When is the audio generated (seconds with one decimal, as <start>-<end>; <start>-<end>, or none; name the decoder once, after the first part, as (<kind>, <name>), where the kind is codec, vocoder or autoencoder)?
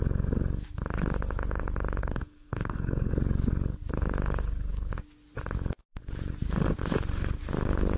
2.0-3.1 (codec, SNAC)